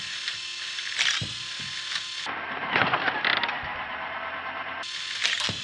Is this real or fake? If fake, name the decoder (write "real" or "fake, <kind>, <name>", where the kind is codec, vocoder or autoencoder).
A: real